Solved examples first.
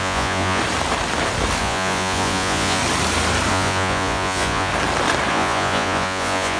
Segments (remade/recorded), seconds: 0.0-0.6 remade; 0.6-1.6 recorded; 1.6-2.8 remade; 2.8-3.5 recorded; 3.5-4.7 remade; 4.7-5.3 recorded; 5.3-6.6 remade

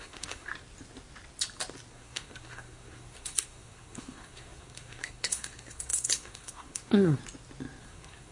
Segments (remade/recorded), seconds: 0.0-0.5 remade; 0.5-1.9 recorded; 1.9-7.2 remade; 7.2-7.8 recorded; 7.8-8.3 remade

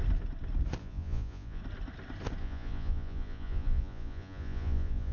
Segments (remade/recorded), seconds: 0.0-0.8 recorded; 0.8-1.6 remade; 1.6-2.4 recorded; 2.4-5.1 remade

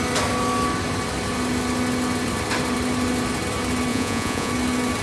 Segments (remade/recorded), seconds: 0.0-3.9 recorded; 3.9-4.5 remade; 4.5-5.0 recorded